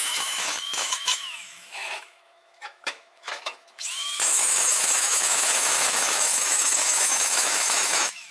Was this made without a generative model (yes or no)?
no